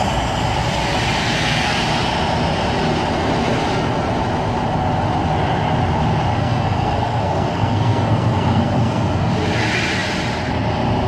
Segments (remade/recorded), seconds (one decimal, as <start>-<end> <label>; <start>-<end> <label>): 0.0-1.2 recorded; 1.2-1.8 remade; 1.8-6.4 recorded; 6.4-9.3 remade; 9.3-11.1 recorded